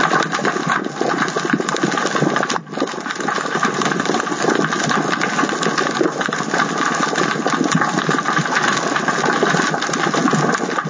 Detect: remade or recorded recorded